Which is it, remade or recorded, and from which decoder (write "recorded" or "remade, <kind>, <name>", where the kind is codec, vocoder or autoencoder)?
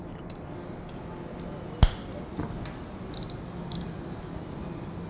recorded